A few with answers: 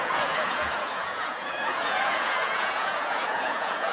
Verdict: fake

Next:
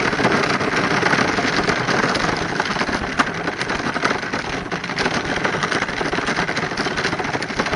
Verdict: real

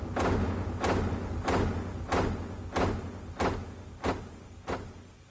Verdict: real